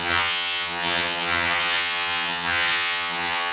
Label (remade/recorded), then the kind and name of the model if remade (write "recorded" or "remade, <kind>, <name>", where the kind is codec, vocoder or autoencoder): remade, vocoder, HiFi-GAN